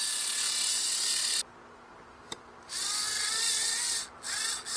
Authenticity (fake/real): real